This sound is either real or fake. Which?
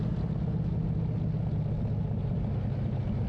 real